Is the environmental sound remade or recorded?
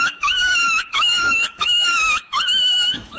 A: remade